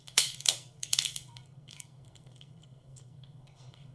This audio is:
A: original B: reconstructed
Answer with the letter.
B